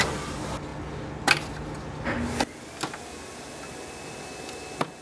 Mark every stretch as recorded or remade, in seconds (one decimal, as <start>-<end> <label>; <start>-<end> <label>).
0.0-5.0 recorded